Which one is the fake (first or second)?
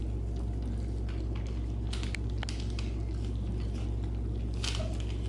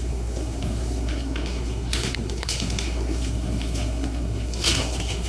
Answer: second